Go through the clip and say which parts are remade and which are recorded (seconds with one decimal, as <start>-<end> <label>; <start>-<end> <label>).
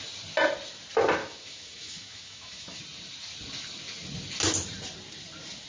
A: 0.0-1.2 recorded; 1.2-2.8 remade; 2.8-5.7 recorded